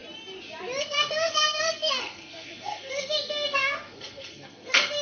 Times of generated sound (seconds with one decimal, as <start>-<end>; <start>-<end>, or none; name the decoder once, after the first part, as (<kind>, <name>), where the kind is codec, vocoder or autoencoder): 0.8-5.0 (codec, SNAC)